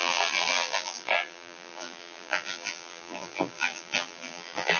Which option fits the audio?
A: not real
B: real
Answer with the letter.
A